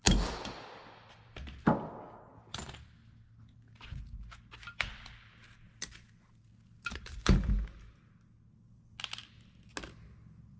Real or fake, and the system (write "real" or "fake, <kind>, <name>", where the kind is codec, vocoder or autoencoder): real